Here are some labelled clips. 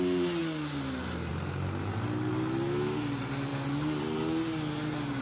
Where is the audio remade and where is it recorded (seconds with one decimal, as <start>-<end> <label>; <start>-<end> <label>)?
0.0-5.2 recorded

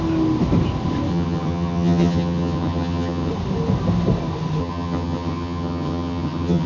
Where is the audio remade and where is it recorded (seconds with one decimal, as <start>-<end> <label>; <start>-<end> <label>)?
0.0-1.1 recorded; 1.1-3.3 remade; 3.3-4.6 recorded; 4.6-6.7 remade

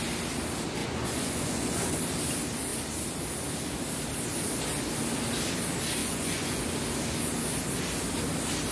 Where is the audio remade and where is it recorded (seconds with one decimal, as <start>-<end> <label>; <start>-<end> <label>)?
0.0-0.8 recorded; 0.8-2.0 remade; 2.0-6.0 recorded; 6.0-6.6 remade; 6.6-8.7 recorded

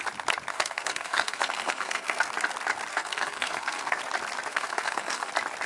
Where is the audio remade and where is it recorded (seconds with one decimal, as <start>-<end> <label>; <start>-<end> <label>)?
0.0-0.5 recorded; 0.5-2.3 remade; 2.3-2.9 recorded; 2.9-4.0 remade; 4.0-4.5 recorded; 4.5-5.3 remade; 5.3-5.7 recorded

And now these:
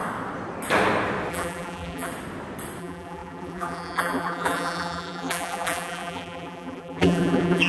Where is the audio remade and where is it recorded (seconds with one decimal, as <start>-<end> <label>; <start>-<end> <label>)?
0.0-1.3 recorded; 1.3-2.1 remade; 2.1-2.8 recorded; 2.8-7.7 remade